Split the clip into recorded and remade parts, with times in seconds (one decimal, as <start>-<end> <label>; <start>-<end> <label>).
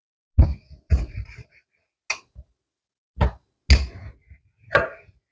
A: 0.0-5.3 recorded